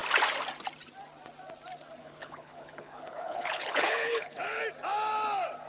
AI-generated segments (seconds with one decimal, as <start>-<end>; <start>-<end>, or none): 2.0-4.6